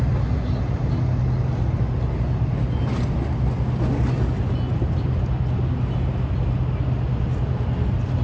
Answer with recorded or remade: recorded